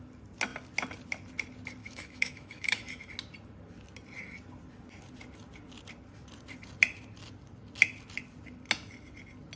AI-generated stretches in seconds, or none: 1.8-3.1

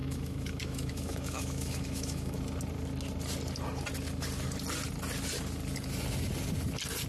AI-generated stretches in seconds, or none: 0.0-2.4

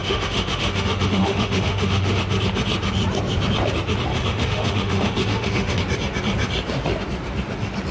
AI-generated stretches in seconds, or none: 0.0-2.2; 4.1-5.8

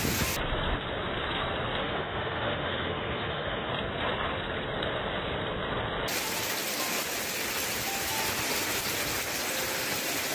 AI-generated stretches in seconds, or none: 1.8-3.7

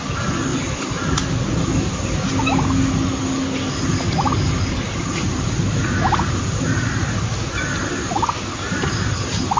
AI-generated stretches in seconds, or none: none

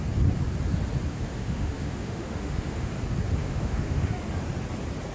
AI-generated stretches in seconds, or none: 1.1-2.9; 3.4-4.1